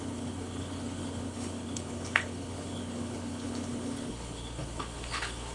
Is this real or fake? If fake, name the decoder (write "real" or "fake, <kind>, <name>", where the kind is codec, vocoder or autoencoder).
fake, codec, HILCodec